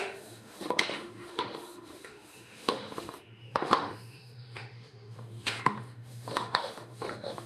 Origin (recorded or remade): remade